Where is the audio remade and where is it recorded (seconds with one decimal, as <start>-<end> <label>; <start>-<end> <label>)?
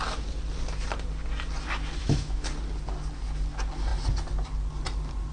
0.0-2.0 recorded; 2.0-2.5 remade; 2.5-5.3 recorded